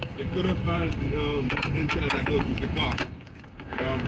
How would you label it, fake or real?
fake